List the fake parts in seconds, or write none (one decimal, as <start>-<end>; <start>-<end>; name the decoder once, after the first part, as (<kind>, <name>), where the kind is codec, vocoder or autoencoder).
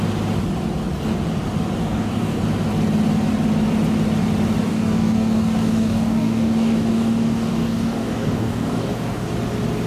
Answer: 1.8-2.4 (codec, DAC); 4.7-9.3